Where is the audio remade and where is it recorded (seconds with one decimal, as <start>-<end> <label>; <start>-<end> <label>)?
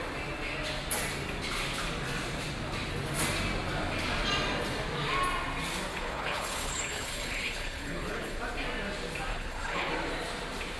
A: 0.0-5.9 recorded; 5.9-8.4 remade; 8.4-9.3 recorded; 9.3-9.9 remade; 9.9-10.8 recorded